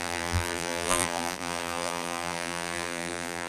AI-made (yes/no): yes